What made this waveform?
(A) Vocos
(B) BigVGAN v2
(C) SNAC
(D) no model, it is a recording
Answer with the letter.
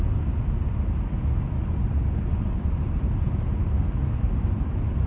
D